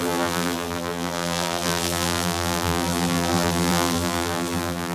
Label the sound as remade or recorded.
remade